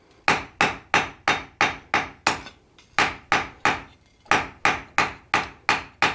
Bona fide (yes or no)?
yes